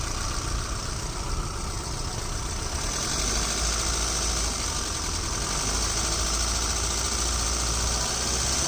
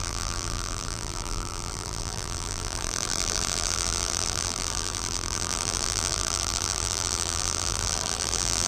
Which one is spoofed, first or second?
second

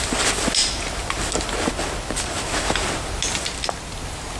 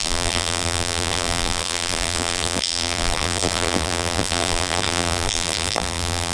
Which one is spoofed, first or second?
second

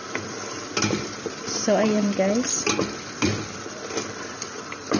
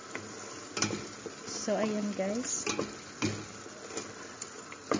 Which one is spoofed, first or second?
first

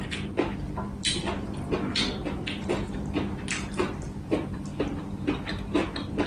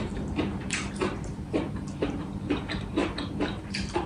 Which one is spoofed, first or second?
second